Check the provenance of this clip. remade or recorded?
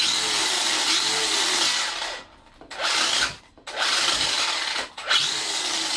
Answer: recorded